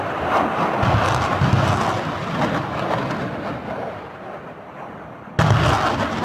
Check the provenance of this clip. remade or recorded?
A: recorded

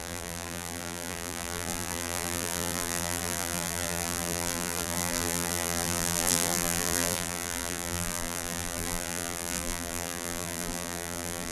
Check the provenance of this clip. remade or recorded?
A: remade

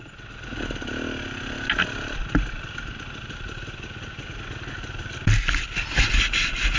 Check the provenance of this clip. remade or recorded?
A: recorded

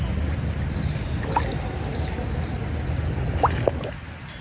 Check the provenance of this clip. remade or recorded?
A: recorded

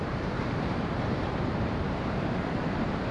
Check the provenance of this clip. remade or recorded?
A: remade